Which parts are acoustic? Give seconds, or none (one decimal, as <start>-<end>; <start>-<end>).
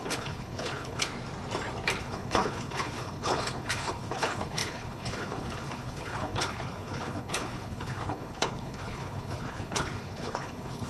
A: 1.1-2.0